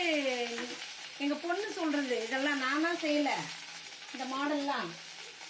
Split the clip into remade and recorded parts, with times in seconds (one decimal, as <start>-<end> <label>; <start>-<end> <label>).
0.0-5.5 recorded

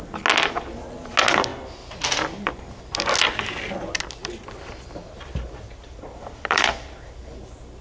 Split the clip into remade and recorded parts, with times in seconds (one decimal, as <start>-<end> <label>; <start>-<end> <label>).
0.0-4.2 recorded; 4.2-7.2 remade; 7.2-7.8 recorded